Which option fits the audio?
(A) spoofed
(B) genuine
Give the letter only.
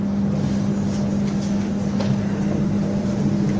B